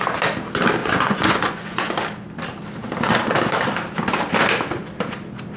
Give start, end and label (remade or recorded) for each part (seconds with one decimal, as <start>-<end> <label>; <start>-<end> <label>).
0.0-0.8 recorded; 0.8-1.9 remade; 1.9-5.6 recorded